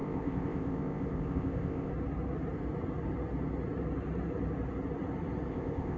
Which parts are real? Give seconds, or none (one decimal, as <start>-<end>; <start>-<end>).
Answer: 1.9-5.5